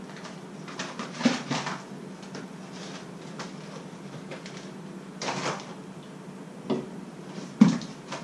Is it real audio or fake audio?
fake